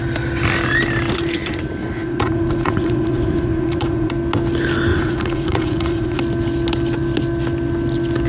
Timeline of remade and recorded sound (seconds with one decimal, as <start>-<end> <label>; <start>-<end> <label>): 0.0-1.8 recorded; 1.8-4.1 remade; 4.1-4.9 recorded; 4.9-6.2 remade; 6.2-8.3 recorded

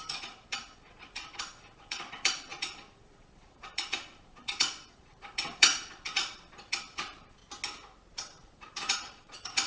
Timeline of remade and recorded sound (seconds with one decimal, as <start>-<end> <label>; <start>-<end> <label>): 0.0-7.4 remade; 7.4-8.1 recorded; 8.1-9.7 remade

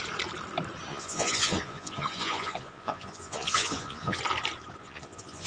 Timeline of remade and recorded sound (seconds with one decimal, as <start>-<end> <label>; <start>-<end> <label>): 0.0-0.9 recorded; 0.9-4.2 remade; 4.2-4.8 recorded; 4.8-5.5 remade

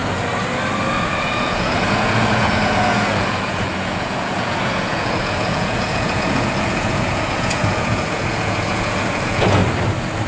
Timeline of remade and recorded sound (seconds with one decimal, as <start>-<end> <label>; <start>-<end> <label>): 0.0-1.0 recorded; 1.0-9.6 remade; 9.6-10.3 recorded

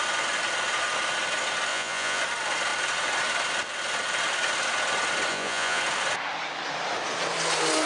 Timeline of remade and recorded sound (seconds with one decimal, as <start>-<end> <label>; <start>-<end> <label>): 0.0-1.7 recorded; 1.7-2.2 remade; 2.2-5.3 recorded; 5.3-5.8 remade; 5.8-7.9 recorded

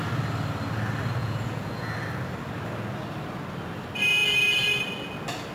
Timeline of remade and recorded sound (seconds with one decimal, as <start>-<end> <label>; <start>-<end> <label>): 0.0-1.2 recorded; 1.2-1.9 remade; 1.9-5.5 recorded

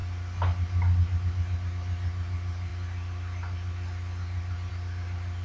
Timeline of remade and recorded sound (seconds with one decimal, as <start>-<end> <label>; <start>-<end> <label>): 0.0-5.4 recorded